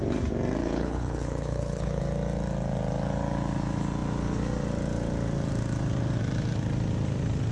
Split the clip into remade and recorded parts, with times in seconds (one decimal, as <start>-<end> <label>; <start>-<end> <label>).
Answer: 0.0-0.6 recorded; 0.6-2.0 remade; 2.0-7.5 recorded